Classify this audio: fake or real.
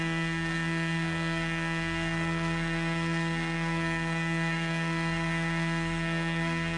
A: fake